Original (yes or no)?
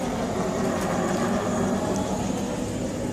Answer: yes